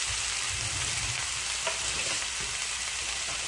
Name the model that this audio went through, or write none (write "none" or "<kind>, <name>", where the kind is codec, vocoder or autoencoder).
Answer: none